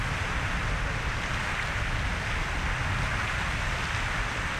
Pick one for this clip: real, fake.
real